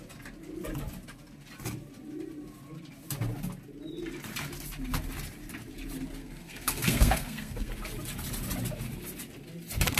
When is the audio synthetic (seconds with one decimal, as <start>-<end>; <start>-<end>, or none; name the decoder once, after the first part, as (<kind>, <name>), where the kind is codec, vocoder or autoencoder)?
6.2-7.7 (codec, SNAC)